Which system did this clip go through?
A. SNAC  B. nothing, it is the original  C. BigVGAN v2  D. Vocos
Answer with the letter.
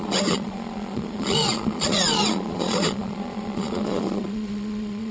D